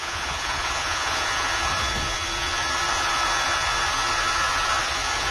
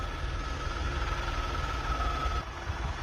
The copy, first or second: first